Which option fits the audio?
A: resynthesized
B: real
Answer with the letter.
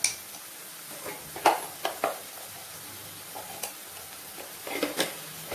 B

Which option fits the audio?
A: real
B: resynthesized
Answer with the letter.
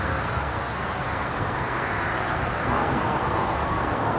B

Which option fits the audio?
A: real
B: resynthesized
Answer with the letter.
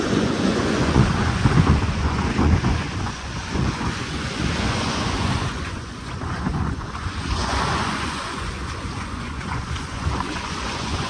B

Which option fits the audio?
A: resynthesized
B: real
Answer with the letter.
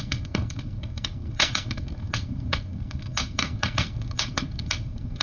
A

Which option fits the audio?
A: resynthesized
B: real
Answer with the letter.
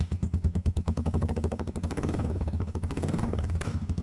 A